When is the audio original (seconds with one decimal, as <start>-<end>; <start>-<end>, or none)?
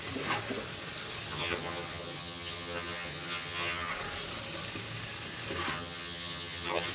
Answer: 0.0-1.3; 3.9-5.7